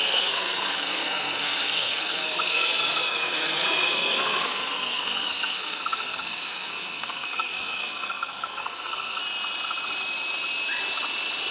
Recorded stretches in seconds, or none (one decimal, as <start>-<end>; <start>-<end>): 9.2-11.5